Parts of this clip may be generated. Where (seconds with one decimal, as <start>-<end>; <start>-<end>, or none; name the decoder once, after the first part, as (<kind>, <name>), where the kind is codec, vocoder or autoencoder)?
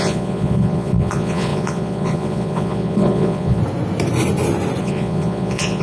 0.0-3.6 (vocoder, Vocos); 4.8-5.8